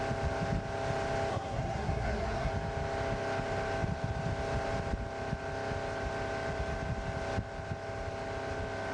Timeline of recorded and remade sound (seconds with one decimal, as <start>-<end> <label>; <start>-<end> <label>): 0.0-1.3 recorded; 1.3-2.5 remade; 2.5-8.9 recorded